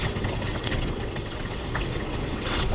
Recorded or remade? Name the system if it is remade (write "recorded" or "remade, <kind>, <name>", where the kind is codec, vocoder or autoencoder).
remade, vocoder, WaveNeXt